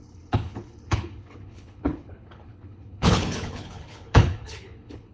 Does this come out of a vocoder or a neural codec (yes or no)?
yes